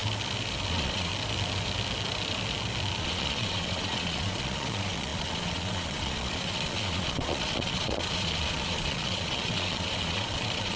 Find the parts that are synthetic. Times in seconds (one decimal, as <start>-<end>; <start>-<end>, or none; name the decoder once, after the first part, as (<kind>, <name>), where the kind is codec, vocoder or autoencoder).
0.7-1.1 (vocoder, Vocos); 3.0-10.8